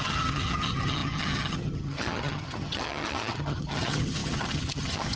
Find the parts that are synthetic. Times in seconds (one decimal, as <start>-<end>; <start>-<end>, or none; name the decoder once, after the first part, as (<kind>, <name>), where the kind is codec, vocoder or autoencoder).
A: 0.0-5.2 (vocoder, HiFi-GAN)